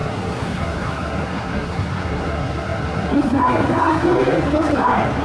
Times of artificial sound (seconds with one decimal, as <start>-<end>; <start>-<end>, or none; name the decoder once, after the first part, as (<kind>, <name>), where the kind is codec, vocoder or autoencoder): 0.0-5.2 (codec, SNAC)